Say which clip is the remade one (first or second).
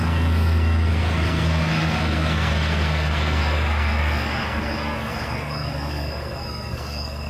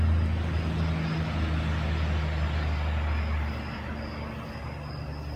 first